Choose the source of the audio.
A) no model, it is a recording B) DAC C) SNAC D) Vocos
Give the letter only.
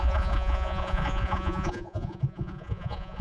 D